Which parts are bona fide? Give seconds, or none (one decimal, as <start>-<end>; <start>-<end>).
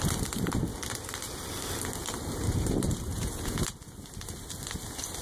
0.0-3.1; 3.6-5.2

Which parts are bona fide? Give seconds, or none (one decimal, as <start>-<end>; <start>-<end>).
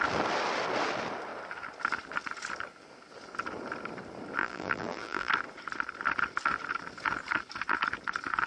0.0-4.4; 5.3-8.5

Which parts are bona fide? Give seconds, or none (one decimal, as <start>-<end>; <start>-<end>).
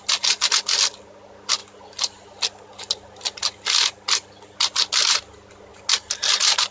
0.0-6.7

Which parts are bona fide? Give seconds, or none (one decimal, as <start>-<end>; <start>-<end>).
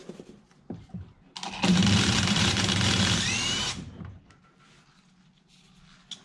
0.0-1.7; 4.4-6.2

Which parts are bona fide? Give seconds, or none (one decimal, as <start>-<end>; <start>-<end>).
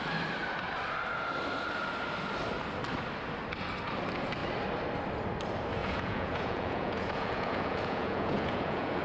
0.0-5.8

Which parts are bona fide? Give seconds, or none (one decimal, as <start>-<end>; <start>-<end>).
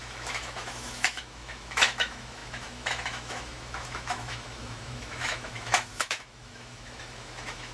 none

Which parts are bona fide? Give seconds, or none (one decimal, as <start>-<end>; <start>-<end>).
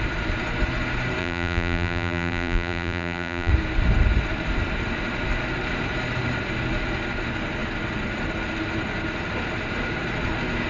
0.0-1.2; 3.5-10.7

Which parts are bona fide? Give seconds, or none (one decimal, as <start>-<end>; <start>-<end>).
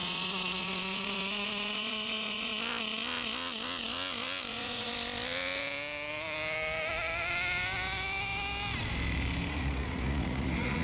2.5-4.5; 4.9-9.5